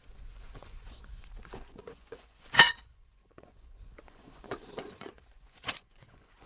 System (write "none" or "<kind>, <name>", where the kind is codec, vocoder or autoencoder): vocoder, Vocos